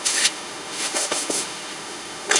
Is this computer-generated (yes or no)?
yes